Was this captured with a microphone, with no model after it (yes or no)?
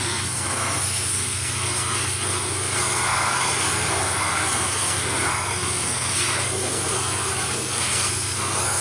no